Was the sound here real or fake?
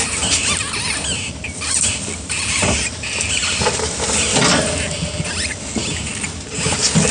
real